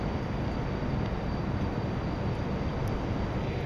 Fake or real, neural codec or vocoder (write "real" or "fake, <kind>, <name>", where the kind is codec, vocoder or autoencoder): real